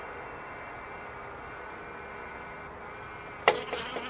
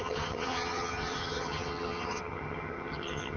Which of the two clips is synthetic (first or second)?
second